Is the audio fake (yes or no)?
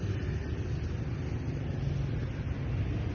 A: no